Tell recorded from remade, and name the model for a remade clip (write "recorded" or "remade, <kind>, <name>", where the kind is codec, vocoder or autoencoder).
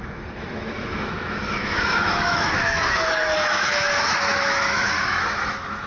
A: remade, autoencoder, DAC-VAE